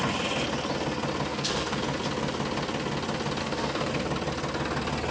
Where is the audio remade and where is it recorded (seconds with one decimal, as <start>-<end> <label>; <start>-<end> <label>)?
0.0-1.3 recorded; 1.3-1.8 remade; 1.8-3.4 recorded; 3.4-3.9 remade; 3.9-5.1 recorded